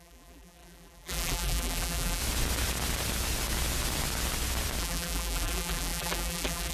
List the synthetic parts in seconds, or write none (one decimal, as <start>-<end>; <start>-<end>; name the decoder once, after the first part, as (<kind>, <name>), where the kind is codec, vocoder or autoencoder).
0.0-2.2 (vocoder, BigVGAN v2); 4.8-6.7